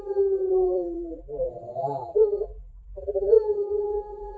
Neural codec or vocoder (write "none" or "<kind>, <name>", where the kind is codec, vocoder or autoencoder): vocoder, BigVGAN v2